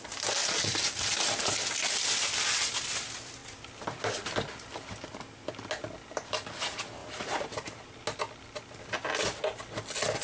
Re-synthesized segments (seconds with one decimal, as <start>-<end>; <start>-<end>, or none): 0.4-1.5; 7.0-7.9